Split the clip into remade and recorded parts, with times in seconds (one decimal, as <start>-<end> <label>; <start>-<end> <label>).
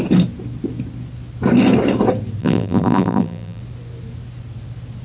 0.0-2.4 recorded; 2.4-3.6 remade; 3.6-5.0 recorded